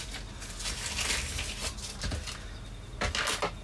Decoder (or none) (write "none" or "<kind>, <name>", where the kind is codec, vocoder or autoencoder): none